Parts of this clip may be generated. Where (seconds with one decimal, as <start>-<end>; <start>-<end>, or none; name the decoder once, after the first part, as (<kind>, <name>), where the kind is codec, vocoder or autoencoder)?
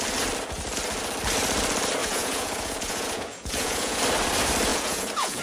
2.0-4.0 (vocoder, Vocos); 4.7-5.4